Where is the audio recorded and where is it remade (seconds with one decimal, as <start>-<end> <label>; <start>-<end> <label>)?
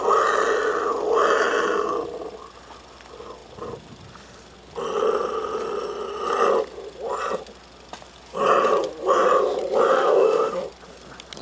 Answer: 0.0-9.9 recorded; 9.9-10.5 remade; 10.5-11.4 recorded